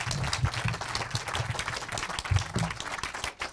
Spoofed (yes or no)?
no